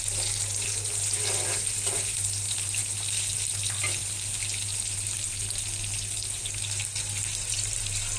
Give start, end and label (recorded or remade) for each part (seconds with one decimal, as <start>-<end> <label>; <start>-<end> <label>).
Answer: 0.0-8.2 recorded